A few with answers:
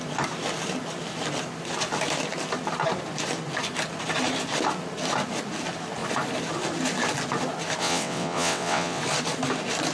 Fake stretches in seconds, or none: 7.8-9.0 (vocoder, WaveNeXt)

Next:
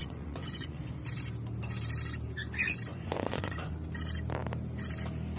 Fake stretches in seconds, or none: 0.0-0.8 (vocoder, Vocos); 2.9-3.7

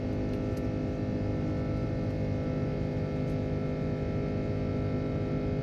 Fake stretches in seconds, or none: none

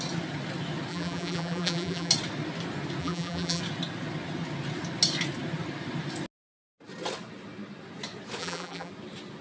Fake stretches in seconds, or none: 0.9-2.1 (vocoder, BigVGAN v2); 3.0-3.6; 8.4-8.9

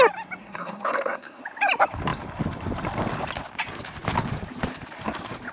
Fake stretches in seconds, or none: 0.4-1.4 (codec, SNAC)